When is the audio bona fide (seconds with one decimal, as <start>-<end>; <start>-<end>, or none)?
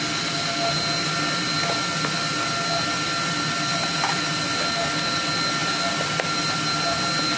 0.0-7.4